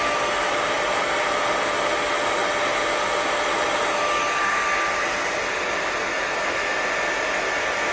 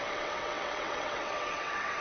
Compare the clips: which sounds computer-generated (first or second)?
second